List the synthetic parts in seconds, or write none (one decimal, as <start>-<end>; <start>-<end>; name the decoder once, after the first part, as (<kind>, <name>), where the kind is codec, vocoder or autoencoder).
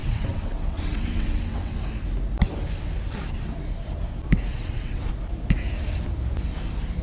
0.0-1.8 (vocoder, WaveNeXt); 4.5-5.1